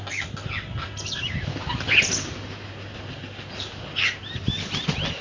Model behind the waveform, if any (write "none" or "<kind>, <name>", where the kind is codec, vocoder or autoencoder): none